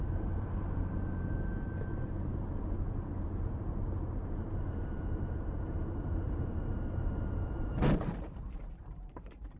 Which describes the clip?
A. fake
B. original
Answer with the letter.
A